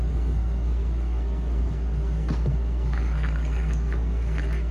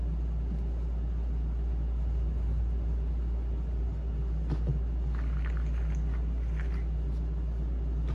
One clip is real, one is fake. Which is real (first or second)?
second